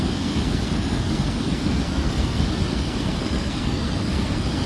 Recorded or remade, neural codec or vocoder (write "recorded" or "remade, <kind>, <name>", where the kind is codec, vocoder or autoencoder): remade, codec, SNAC